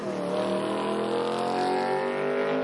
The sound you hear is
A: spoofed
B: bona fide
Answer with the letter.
B